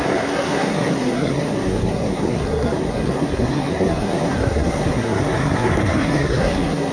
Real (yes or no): no